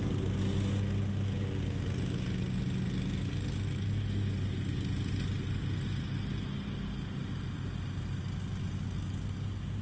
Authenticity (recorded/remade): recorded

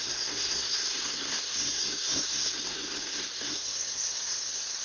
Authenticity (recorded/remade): remade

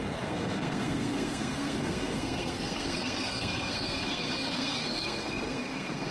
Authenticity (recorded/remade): remade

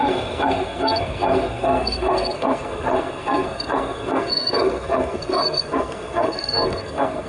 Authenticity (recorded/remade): remade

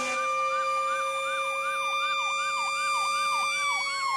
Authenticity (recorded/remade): recorded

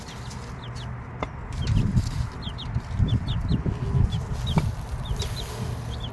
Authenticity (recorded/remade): recorded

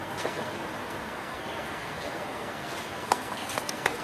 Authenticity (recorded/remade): remade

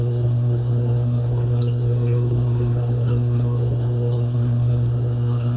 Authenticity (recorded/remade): remade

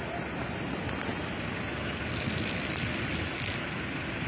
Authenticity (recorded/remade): recorded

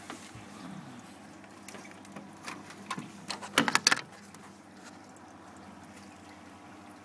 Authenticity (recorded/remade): recorded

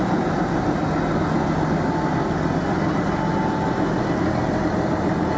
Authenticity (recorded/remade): recorded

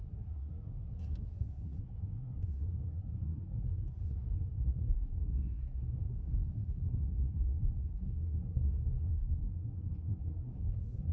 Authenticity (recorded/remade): remade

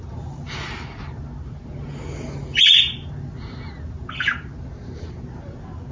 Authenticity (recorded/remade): recorded